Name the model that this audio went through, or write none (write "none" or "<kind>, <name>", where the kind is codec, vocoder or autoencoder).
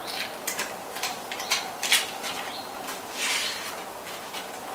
none